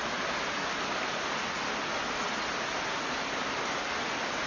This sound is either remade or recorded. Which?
recorded